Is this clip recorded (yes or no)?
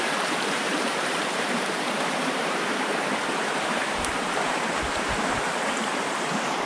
no